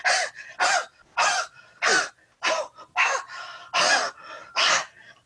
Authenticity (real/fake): real